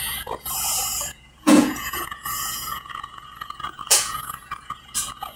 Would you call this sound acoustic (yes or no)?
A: no